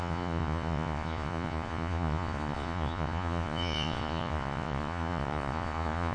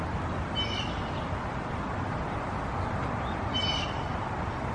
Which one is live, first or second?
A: second